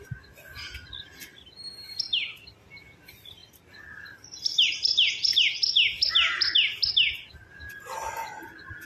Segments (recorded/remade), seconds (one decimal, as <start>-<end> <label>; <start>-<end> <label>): 0.0-8.9 recorded